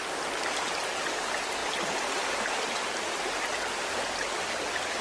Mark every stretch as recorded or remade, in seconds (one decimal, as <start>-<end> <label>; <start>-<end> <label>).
0.0-5.0 recorded